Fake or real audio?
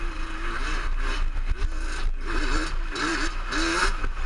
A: real